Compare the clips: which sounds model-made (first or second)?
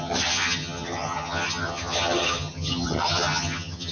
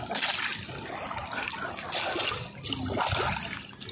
first